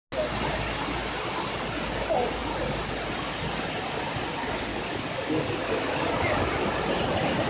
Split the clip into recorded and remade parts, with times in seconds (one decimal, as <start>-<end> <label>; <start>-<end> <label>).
0.0-4.7 recorded; 4.7-6.4 remade; 6.4-7.5 recorded